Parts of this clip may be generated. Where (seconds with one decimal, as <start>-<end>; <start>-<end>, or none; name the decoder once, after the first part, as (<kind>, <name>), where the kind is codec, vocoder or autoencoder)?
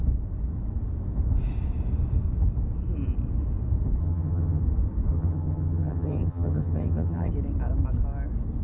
4.0-4.6 (vocoder, HiFi-GAN); 5.1-7.3